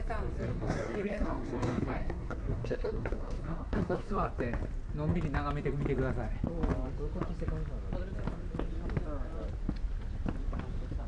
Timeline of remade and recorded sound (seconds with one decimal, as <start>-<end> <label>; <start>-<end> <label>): 0.0-0.5 recorded; 0.5-4.3 remade; 4.3-11.1 recorded